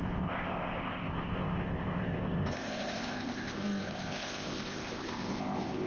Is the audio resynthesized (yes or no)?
yes